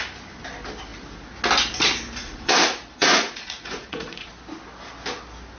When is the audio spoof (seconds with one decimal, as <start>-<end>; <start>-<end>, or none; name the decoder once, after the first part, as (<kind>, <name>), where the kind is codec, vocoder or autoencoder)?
2.2-4.3 (vocoder, Vocos)